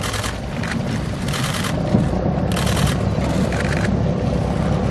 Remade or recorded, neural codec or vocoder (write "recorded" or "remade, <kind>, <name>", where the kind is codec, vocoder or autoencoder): recorded